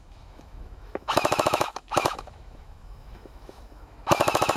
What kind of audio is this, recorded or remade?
remade